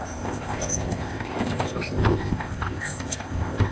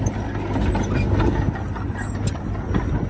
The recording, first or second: second